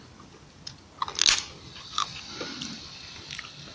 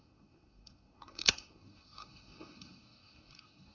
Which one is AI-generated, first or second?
second